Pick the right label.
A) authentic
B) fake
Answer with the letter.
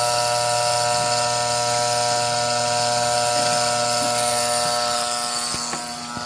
A